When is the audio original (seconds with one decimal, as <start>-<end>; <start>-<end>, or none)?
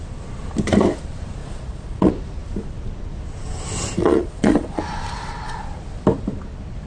0.0-1.4; 2.1-4.0; 4.8-6.9